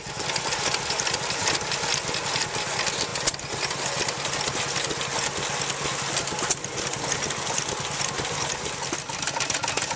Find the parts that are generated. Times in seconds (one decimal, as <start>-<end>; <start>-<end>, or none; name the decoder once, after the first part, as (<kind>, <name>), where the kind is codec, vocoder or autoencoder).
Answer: none